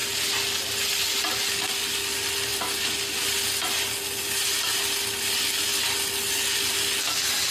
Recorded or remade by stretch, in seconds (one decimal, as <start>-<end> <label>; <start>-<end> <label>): 0.0-7.5 recorded